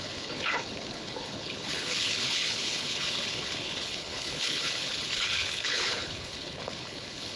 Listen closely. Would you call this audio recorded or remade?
remade